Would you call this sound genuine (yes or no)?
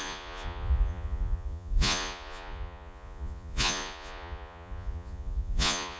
no